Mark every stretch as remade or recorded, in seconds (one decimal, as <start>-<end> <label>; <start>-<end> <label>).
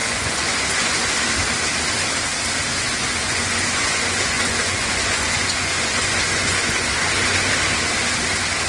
0.0-1.1 remade; 1.1-2.7 recorded; 2.7-7.5 remade; 7.5-8.7 recorded